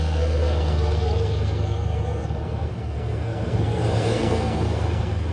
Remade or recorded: remade